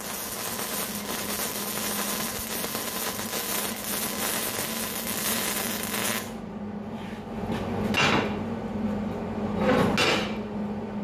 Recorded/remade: recorded